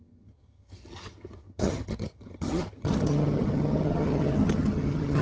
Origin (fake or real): fake